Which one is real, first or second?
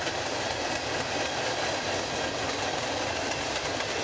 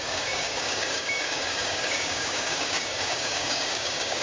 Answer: first